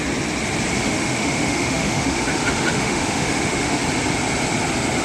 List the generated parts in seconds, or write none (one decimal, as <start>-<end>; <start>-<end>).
0.8-3.8